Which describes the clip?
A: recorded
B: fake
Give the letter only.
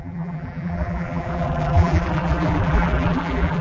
B